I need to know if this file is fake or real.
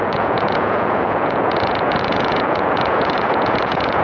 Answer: fake